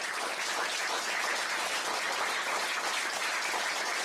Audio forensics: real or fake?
real